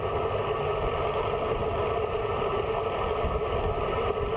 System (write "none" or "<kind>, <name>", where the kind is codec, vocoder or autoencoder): none